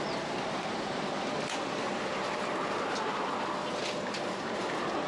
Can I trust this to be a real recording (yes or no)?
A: yes